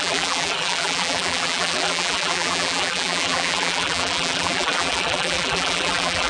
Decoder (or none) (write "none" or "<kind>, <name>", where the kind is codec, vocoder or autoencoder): vocoder, BigVGAN v2